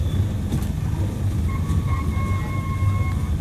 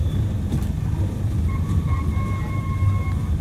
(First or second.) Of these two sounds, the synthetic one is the second